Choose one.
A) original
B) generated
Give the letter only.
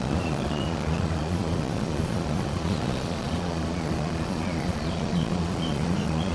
B